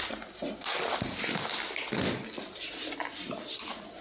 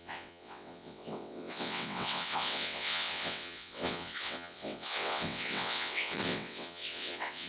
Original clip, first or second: first